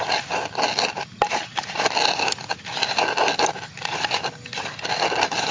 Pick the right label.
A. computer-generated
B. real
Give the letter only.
B